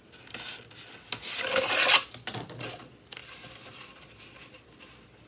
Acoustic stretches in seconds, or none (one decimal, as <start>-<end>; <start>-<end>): 0.0-5.3